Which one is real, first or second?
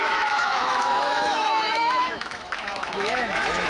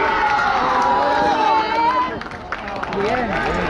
second